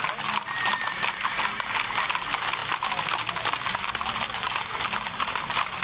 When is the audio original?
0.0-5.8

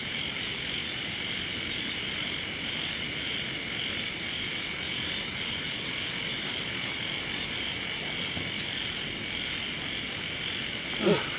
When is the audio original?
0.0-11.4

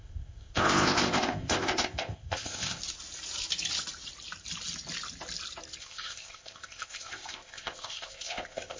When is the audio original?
2.8-5.8